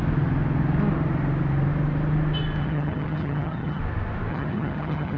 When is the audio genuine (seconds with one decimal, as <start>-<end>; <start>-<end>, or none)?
0.0-2.6; 3.8-4.3